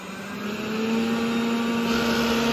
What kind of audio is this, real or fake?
real